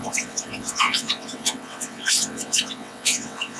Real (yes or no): no